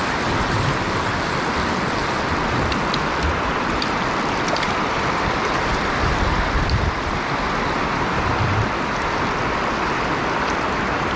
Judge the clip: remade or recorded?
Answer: remade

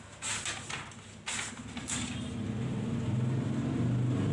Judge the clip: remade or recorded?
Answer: recorded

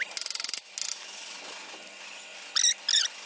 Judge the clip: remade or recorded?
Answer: recorded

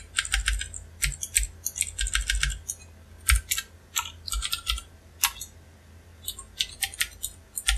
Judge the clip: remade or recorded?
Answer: recorded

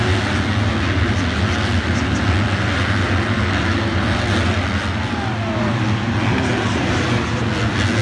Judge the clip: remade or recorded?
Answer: recorded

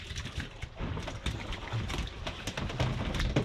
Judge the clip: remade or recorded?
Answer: recorded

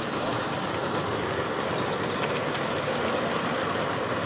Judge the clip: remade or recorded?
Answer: recorded